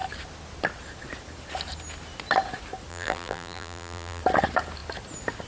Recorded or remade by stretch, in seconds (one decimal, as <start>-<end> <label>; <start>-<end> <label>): 0.0-2.9 recorded; 2.9-4.2 remade; 4.2-5.5 recorded